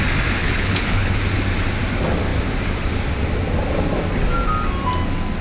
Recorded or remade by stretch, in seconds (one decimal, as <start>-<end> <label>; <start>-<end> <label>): 0.0-0.4 recorded; 0.4-1.2 remade; 1.2-5.4 recorded